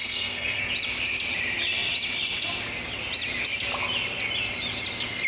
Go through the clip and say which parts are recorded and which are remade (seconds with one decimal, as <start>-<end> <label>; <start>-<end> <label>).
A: 0.0-0.6 remade; 0.6-5.3 recorded